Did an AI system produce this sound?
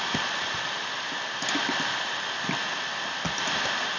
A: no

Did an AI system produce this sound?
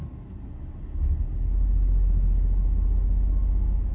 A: no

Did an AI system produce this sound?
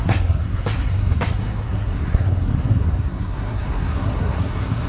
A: yes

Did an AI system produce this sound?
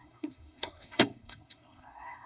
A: yes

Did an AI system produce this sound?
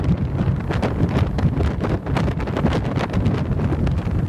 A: no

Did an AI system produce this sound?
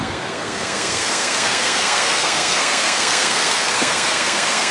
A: yes